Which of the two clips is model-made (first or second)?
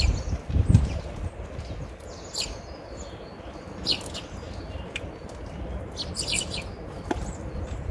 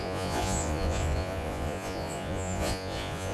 second